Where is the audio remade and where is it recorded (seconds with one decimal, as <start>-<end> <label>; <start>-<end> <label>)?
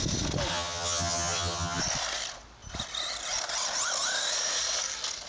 0.0-0.5 recorded; 0.5-1.8 remade; 1.8-5.3 recorded